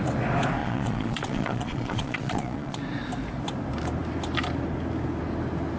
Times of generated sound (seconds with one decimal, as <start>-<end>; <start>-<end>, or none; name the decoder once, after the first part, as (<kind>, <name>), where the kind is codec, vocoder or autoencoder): 0.6-2.8 (vocoder, Vocos)